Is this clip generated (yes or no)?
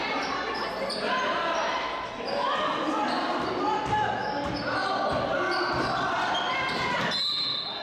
no